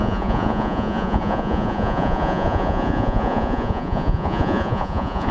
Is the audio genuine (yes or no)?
no